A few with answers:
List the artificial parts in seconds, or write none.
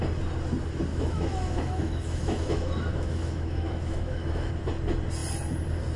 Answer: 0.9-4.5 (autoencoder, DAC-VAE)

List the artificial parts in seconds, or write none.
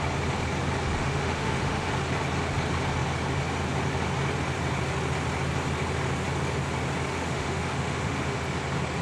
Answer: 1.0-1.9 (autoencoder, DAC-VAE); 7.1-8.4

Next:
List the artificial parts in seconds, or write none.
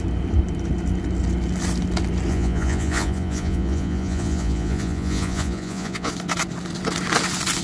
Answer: 2.3-6.1 (vocoder, Vocos)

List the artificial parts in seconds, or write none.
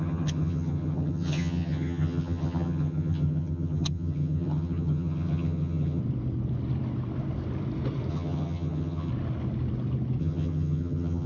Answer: 0.0-6.0 (vocoder, HiFi-GAN); 8.1-9.1; 10.2-11.3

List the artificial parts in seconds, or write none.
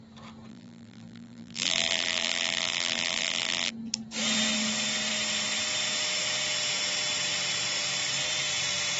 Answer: 0.5-3.7 (vocoder, BigVGAN v2)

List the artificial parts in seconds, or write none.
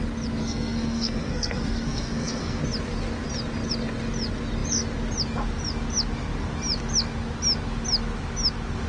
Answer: 0.4-2.6 (codec, SNAC)